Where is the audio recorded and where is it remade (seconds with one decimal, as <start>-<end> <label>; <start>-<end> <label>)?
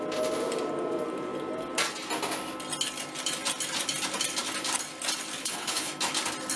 0.0-5.4 recorded; 5.4-5.9 remade; 5.9-6.6 recorded